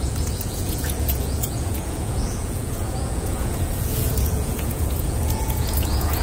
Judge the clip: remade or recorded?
remade